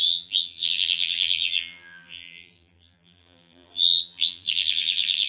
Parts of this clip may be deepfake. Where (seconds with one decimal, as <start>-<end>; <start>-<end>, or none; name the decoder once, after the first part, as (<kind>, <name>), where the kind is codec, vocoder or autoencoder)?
0.0-5.3 (vocoder, BigVGAN v2)